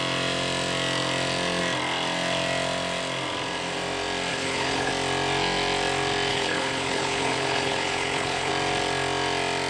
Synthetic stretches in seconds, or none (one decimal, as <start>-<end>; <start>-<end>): 4.3-4.9; 6.3-8.5